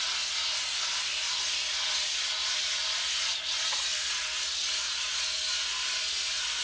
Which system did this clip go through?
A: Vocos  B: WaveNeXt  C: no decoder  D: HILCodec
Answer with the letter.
C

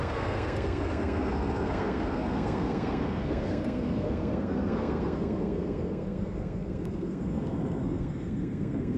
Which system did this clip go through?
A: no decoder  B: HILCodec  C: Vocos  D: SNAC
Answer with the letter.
D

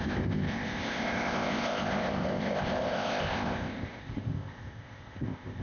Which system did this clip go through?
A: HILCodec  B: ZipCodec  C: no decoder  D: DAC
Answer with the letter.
B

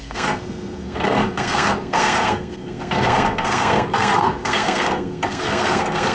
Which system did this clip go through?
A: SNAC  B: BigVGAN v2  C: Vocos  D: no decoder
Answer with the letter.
A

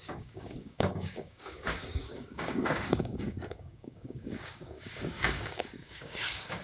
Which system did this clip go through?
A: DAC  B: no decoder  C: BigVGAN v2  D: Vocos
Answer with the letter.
A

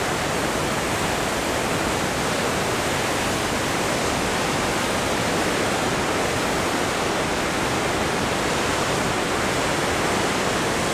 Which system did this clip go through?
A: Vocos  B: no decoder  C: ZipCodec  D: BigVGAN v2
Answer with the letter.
B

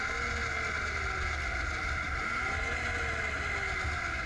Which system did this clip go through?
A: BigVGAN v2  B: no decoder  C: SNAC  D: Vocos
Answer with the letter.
B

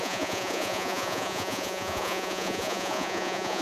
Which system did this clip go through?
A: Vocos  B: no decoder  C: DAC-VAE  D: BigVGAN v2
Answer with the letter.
A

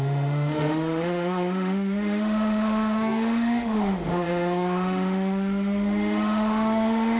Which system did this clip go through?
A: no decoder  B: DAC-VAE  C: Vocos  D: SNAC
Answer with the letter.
B